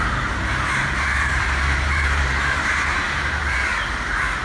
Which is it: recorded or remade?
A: remade